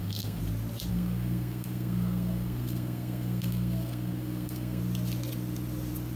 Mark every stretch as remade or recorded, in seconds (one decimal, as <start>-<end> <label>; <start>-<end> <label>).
0.0-0.4 remade; 0.4-0.9 recorded; 0.9-4.8 remade; 4.8-6.2 recorded